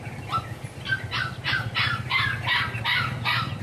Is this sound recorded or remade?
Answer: recorded